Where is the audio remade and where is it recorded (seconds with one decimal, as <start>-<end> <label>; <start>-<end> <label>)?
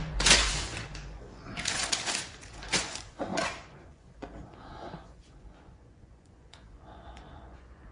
0.0-7.9 remade